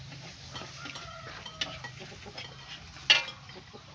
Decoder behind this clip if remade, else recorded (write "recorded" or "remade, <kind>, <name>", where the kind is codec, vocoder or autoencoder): recorded